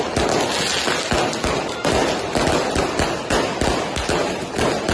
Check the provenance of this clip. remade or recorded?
recorded